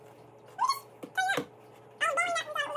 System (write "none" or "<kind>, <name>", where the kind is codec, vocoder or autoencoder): none